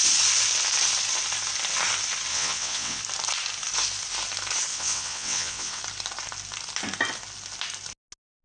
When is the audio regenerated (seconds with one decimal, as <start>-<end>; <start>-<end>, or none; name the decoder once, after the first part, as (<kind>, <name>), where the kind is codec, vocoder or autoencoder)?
2.3-3.0 (vocoder, WaveNeXt); 4.7-5.8